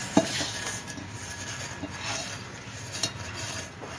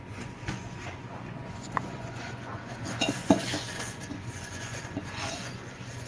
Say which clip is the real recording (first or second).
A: first